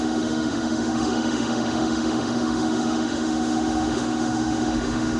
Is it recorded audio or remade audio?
remade